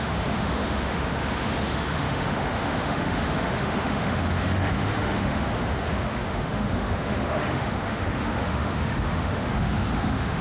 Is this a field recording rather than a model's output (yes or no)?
no